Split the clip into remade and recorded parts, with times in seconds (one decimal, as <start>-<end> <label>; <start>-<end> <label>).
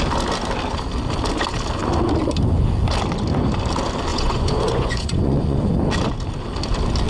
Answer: 0.0-4.1 recorded; 4.1-5.7 remade; 5.7-7.1 recorded